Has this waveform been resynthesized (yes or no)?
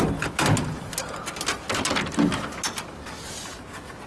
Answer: no